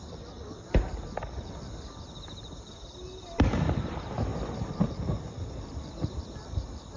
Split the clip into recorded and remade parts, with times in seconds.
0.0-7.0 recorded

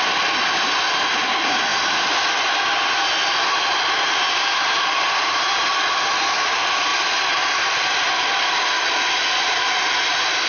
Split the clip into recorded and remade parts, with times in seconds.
0.0-6.9 recorded; 6.9-9.0 remade; 9.0-10.5 recorded

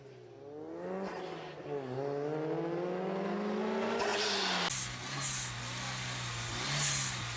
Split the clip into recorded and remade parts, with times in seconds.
0.0-7.4 recorded

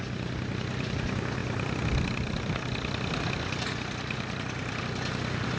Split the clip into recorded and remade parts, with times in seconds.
0.0-1.4 recorded; 1.4-4.8 remade; 4.8-5.6 recorded